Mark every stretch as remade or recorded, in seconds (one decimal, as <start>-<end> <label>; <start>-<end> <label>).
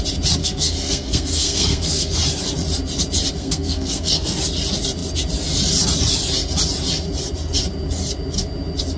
0.0-0.4 recorded; 0.4-2.2 remade; 2.2-3.4 recorded; 3.4-4.4 remade; 4.4-9.0 recorded